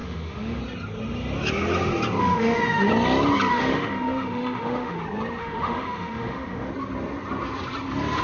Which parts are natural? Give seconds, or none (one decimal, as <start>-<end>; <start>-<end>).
0.6-2.2; 2.9-3.5; 5.0-5.4; 6.7-8.2